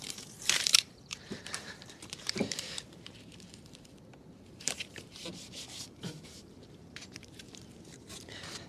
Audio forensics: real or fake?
fake